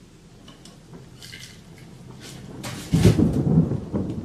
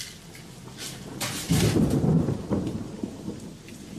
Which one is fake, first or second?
second